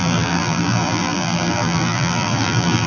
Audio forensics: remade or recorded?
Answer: remade